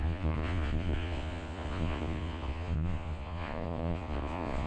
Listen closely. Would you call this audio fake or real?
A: fake